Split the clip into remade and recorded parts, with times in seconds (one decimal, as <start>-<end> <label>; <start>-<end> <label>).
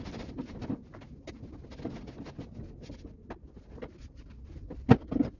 0.0-5.4 recorded